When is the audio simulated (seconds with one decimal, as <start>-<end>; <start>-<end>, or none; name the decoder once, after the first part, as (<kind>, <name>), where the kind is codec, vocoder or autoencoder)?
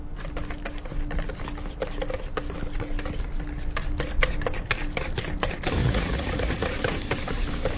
5.8-6.7 (vocoder, Vocos)